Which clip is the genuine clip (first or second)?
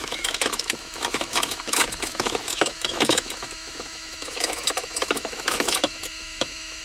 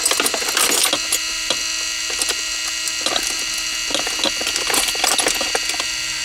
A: second